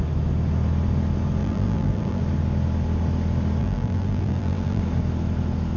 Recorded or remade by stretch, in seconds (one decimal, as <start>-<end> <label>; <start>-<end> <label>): 0.0-1.4 recorded; 1.4-2.2 remade; 2.2-3.6 recorded; 3.6-4.8 remade; 4.8-5.8 recorded